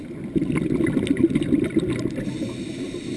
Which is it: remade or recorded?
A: recorded